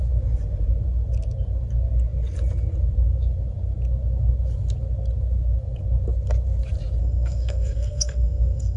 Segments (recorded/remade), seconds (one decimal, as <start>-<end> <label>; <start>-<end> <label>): 0.0-7.0 recorded; 7.0-8.8 remade